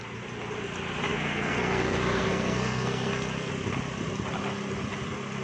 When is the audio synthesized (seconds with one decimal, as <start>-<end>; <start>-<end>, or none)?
1.1-3.5